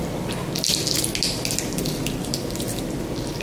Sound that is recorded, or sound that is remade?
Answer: recorded